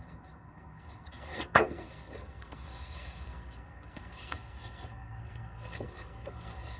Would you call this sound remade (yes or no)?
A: yes